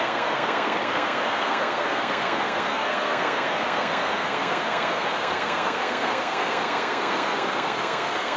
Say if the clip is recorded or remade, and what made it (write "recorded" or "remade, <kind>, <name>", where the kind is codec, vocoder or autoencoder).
remade, codec, SNAC